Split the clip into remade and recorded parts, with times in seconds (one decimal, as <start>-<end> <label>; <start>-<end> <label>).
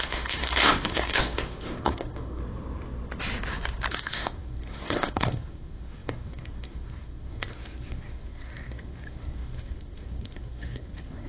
0.0-2.4 remade; 2.4-3.9 recorded; 3.9-11.3 remade